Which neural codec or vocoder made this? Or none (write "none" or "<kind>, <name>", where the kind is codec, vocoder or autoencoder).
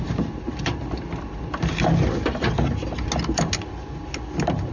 none